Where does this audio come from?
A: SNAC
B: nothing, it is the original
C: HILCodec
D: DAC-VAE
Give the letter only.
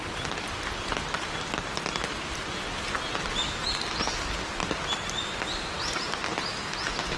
B